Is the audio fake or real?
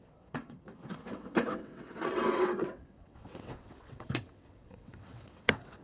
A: fake